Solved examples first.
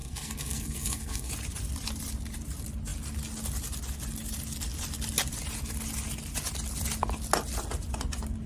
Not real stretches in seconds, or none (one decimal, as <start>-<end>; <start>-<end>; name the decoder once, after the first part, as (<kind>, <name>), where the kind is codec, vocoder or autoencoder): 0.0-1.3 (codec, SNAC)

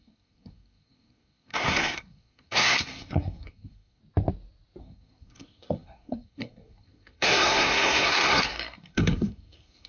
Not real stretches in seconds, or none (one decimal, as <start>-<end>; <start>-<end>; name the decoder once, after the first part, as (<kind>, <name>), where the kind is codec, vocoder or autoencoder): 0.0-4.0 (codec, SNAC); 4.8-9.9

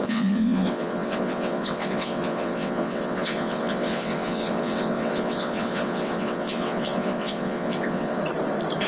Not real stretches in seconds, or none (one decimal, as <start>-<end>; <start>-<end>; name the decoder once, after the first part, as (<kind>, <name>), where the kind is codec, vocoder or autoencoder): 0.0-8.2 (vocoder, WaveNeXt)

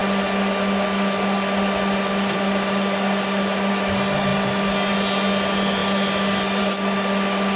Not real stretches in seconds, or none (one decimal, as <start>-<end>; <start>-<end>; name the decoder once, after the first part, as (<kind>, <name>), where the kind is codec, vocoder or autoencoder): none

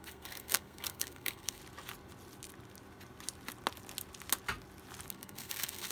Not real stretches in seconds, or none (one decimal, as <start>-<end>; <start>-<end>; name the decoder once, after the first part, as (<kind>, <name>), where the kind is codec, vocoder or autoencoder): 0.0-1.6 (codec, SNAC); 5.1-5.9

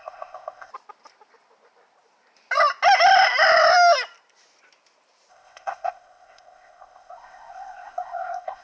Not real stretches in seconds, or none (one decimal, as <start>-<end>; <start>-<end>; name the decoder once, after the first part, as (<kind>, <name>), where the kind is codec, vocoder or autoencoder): 0.0-0.7 (codec, ZipCodec); 5.3-8.6

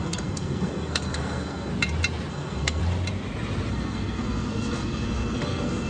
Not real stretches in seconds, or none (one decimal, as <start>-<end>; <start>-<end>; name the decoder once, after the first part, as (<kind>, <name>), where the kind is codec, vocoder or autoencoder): 0.0-1.7 (codec, SNAC); 2.3-2.8; 3.7-5.9